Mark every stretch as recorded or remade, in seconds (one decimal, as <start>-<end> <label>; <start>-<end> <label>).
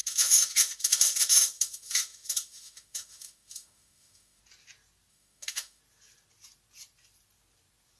0.0-4.4 remade; 4.4-5.1 recorded; 5.1-5.8 remade; 5.8-8.0 recorded